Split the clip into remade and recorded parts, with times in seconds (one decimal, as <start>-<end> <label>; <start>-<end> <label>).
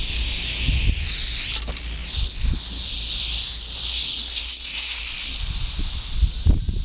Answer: 0.0-3.9 recorded; 3.9-5.0 remade; 5.0-6.8 recorded